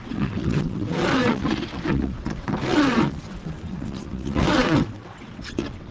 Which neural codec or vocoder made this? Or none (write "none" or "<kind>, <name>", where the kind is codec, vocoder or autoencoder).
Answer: vocoder, WaveNeXt